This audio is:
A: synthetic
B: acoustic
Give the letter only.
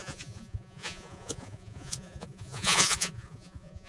A